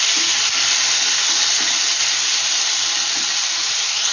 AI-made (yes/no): no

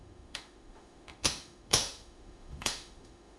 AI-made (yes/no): yes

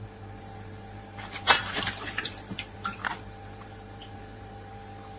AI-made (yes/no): yes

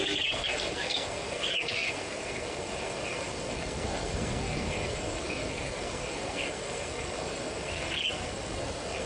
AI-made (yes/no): yes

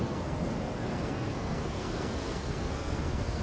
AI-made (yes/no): yes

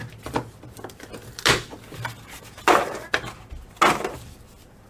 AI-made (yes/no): no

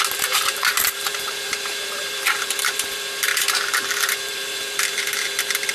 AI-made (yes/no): yes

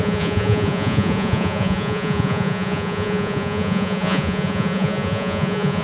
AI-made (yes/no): yes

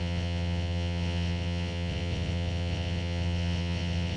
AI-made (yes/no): yes